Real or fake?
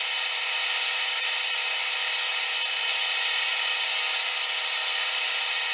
fake